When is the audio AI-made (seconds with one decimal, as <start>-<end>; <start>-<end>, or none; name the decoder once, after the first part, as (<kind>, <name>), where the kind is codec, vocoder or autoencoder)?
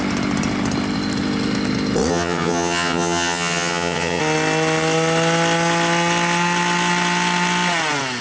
2.1-4.2 (vocoder, HiFi-GAN)